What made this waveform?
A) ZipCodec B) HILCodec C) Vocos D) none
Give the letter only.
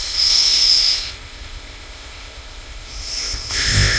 A